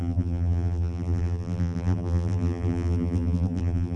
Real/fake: fake